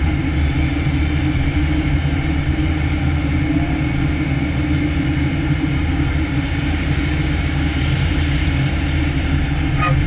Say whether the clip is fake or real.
fake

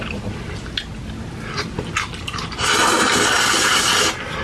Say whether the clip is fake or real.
real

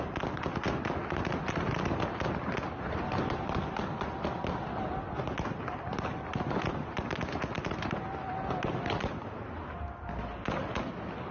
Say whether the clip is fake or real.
real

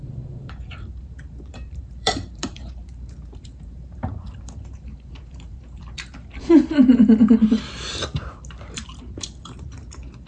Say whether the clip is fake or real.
fake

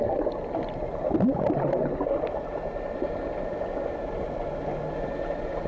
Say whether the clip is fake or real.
real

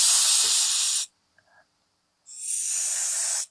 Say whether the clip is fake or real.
real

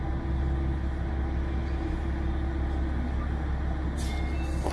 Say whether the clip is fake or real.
real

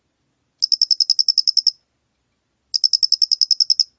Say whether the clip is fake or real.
real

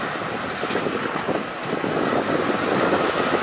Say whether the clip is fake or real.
real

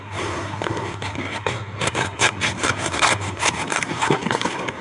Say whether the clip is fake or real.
fake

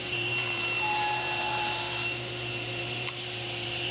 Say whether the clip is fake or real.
fake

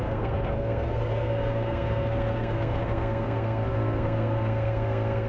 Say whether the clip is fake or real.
fake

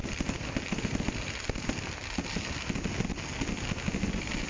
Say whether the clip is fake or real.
real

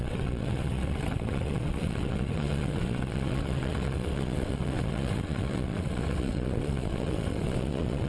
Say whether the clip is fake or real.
fake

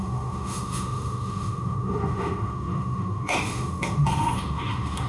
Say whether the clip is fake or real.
fake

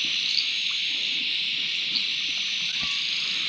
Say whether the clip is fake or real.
real